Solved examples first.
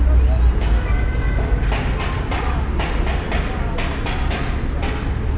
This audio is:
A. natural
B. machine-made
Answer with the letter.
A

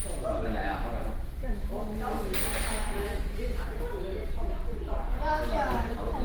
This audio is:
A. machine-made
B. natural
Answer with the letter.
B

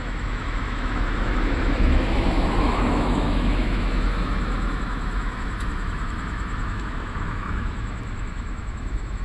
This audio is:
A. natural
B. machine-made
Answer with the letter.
B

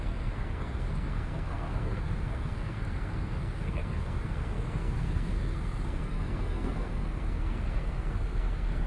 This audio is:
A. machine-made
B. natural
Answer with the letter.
A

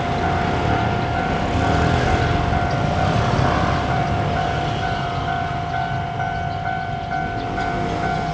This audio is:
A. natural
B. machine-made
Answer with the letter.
A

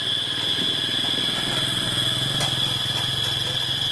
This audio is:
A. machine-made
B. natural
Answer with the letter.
B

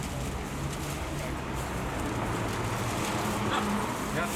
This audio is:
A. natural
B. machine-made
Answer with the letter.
A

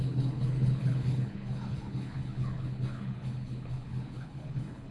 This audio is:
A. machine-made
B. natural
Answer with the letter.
A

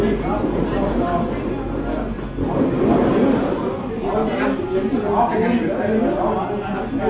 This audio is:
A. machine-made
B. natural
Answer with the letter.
B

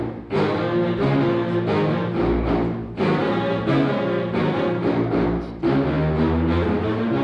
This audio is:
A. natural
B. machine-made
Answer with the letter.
A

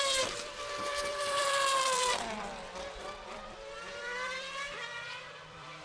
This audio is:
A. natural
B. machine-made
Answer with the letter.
B